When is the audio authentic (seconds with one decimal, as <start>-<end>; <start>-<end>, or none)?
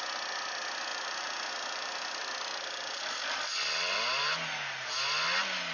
0.0-5.7